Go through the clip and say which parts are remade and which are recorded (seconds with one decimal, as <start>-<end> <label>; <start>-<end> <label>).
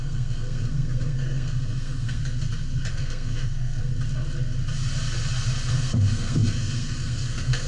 0.0-2.2 remade; 2.2-2.9 recorded; 2.9-3.9 remade; 3.9-5.7 recorded; 5.7-7.7 remade